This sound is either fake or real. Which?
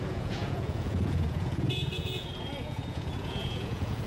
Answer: fake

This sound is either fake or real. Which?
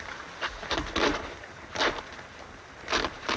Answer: real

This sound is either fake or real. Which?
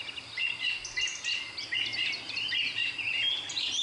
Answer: real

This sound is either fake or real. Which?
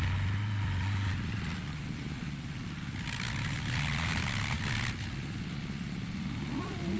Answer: real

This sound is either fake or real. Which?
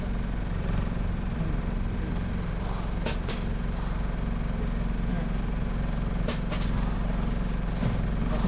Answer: fake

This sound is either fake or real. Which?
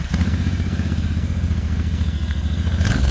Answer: fake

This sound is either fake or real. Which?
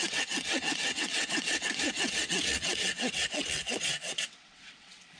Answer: fake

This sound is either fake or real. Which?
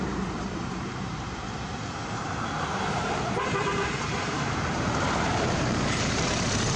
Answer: fake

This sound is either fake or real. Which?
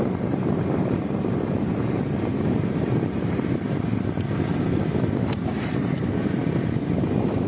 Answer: fake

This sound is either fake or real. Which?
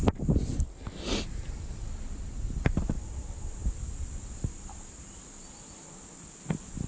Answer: real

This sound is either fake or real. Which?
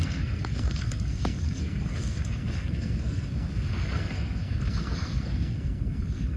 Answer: fake